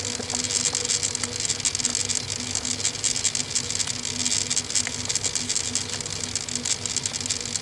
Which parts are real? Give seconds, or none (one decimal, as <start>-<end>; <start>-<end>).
0.0-7.6